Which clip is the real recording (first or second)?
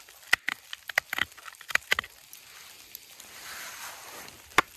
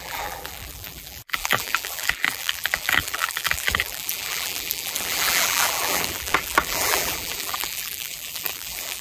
first